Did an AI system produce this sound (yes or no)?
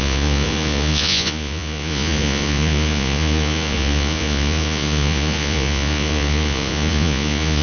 yes